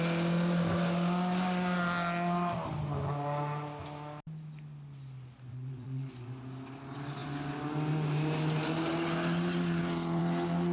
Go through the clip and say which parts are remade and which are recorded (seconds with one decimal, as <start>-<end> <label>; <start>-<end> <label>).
0.0-5.5 recorded; 5.5-6.1 remade; 6.1-10.7 recorded

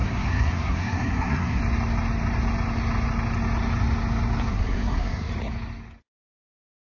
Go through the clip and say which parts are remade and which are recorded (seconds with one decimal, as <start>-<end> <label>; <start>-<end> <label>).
0.0-1.6 remade; 1.6-4.5 recorded; 4.5-5.3 remade; 5.3-6.9 recorded

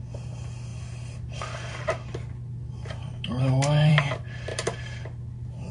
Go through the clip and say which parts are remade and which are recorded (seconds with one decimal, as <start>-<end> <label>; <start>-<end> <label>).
0.0-5.7 recorded

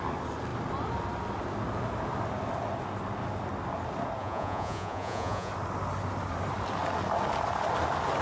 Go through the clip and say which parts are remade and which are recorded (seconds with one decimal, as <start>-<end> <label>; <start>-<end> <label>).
0.0-4.2 recorded; 4.2-5.5 remade; 5.5-8.2 recorded

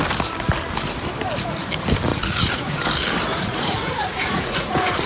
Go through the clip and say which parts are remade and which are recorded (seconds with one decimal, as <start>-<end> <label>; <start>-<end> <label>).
0.0-2.1 recorded; 2.1-2.7 remade; 2.7-3.3 recorded; 3.3-5.1 remade

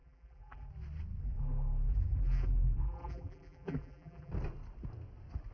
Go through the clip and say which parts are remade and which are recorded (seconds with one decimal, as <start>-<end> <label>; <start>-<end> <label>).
0.0-0.7 remade; 0.7-1.2 recorded; 1.2-4.3 remade; 4.3-5.5 recorded